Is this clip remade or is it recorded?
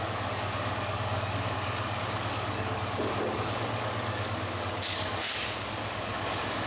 remade